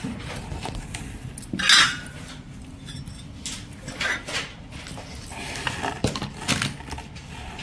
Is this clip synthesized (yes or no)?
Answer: no